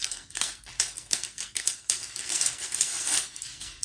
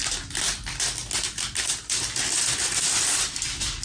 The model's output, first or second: first